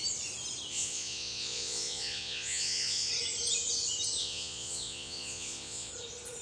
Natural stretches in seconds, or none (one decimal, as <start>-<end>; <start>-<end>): 0.0-0.7; 3.1-4.2; 5.9-6.4